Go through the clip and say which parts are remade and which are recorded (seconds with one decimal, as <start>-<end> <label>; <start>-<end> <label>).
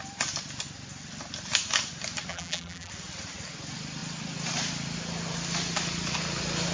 0.0-2.3 recorded; 2.3-2.9 remade; 2.9-6.7 recorded